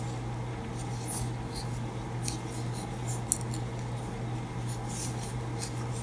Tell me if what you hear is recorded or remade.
recorded